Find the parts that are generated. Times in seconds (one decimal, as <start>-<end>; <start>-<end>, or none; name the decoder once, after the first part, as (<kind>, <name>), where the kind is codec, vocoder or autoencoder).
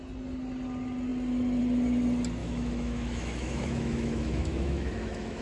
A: 2.4-5.4 (autoencoder, DAC-VAE)